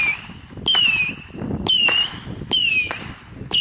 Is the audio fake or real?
real